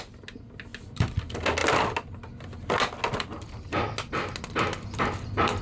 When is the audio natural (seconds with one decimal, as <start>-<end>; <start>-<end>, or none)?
0.0-5.6